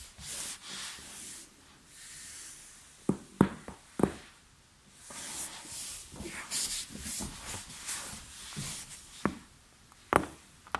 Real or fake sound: real